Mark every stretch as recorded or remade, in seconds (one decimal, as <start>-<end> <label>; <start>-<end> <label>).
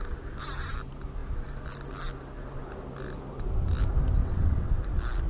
0.0-4.2 recorded; 4.2-4.7 remade; 4.7-5.3 recorded